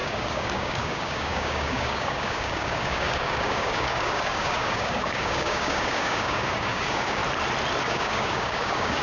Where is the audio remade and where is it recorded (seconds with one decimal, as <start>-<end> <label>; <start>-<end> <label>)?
0.0-7.2 remade; 7.2-7.8 recorded; 7.8-9.0 remade